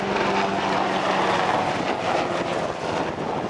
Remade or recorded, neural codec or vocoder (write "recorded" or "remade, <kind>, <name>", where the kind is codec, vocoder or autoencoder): recorded